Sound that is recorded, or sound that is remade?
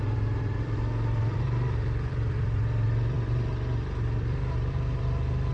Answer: remade